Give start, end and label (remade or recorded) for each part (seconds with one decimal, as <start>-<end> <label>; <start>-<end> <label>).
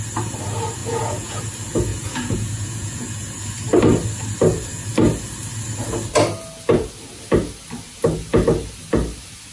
0.0-0.8 recorded; 0.8-1.4 remade; 1.4-1.9 recorded; 1.9-3.4 remade; 3.4-9.5 recorded